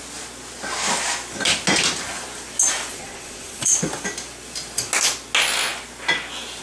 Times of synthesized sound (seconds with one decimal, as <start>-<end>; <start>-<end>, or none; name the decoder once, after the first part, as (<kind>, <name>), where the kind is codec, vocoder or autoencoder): 2.9-3.7 (vocoder, Vocos)